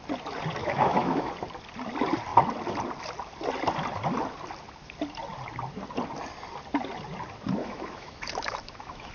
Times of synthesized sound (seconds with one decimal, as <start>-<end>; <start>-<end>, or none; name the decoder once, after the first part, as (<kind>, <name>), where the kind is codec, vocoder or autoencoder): 0.6-1.3 (autoencoder, DAC-VAE); 7.6-9.1